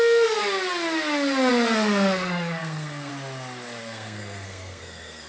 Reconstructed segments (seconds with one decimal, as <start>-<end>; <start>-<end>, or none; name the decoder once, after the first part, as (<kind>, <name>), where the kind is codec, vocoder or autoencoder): 0.0-0.4 (codec, SNAC); 1.5-3.1; 3.8-5.3